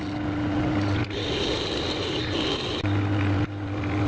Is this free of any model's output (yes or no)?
yes